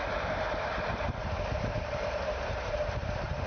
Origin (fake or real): fake